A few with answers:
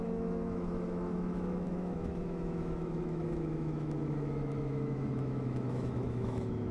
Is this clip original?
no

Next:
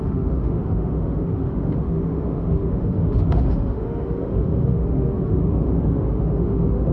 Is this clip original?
no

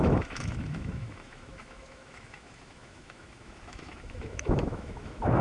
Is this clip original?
no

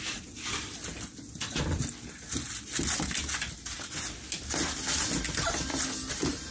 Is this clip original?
yes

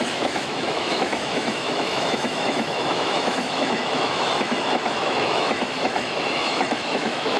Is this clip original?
no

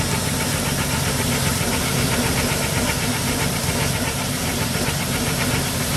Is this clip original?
yes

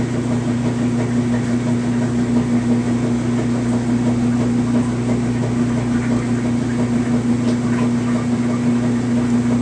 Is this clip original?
yes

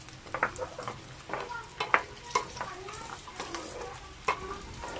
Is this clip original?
yes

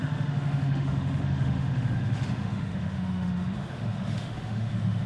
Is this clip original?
no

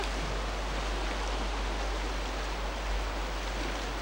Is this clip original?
yes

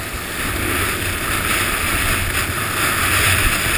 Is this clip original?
yes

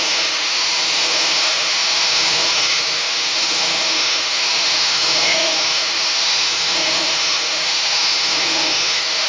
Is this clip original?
no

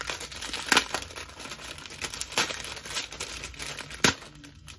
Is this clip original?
yes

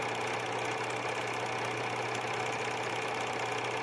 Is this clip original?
yes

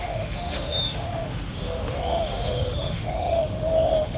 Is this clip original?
no